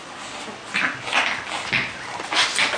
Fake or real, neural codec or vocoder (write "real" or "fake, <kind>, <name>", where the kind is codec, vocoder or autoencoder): real